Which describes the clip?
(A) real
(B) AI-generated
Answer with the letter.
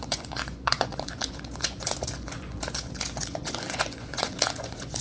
B